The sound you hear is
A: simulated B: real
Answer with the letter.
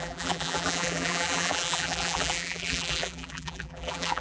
A